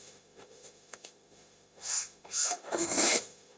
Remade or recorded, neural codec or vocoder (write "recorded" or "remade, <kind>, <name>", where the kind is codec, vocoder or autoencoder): remade, autoencoder, DAC-VAE